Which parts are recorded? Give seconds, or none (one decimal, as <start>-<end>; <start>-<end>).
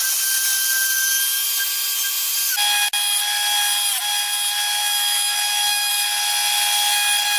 0.0-4.8; 5.9-7.4